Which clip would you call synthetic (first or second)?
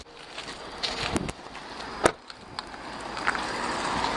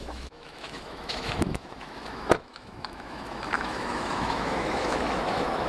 second